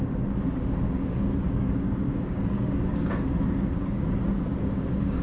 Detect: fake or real fake